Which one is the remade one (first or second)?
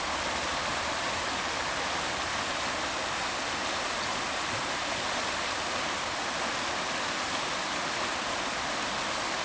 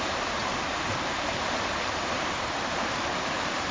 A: second